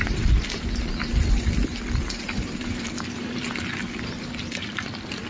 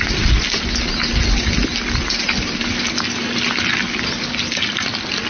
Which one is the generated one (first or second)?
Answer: first